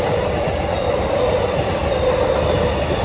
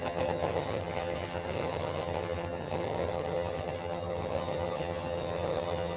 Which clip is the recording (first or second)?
first